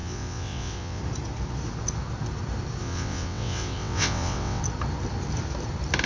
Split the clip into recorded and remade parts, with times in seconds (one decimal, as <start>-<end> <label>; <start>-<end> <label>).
0.0-1.0 remade; 1.0-2.8 recorded; 2.8-4.6 remade; 4.6-6.1 recorded